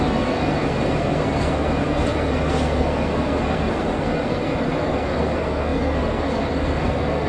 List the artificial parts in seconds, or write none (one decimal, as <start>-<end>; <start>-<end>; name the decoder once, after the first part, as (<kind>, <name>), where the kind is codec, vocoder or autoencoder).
0.0-7.3 (codec, SNAC)